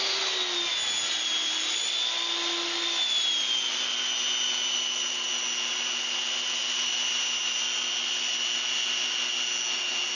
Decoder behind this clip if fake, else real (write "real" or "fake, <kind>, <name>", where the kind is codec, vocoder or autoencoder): real